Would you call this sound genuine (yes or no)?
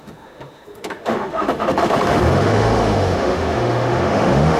no